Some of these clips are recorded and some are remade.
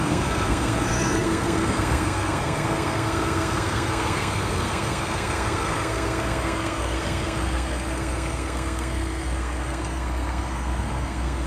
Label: remade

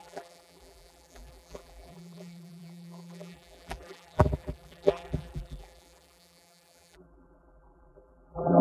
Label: remade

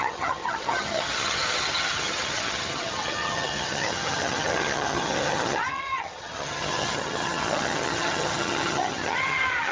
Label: remade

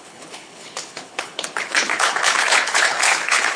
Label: remade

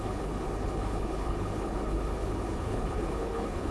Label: remade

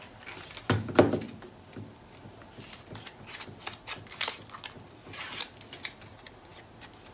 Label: recorded